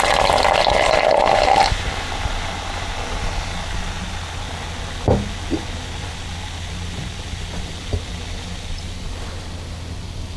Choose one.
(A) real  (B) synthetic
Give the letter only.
A